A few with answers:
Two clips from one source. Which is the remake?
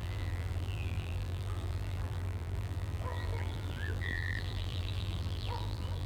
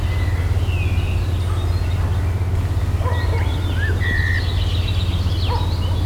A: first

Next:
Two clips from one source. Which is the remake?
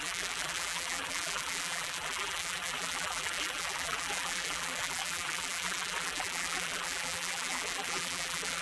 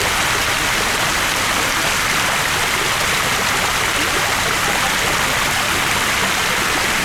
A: first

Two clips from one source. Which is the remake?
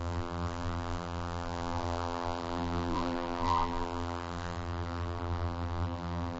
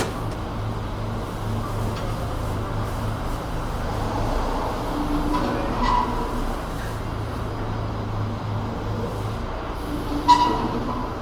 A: first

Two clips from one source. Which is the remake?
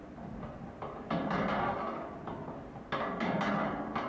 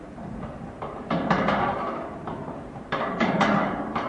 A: second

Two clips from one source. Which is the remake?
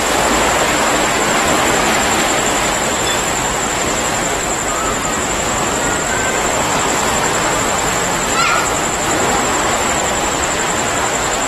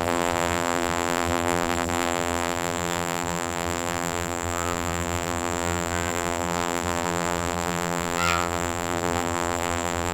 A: second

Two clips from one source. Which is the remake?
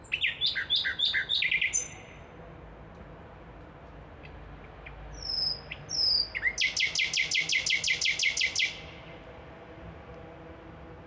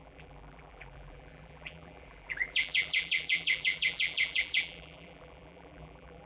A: second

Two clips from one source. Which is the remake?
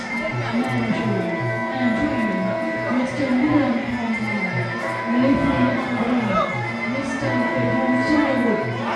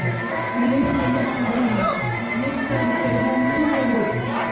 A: second